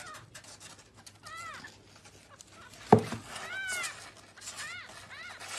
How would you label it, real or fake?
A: real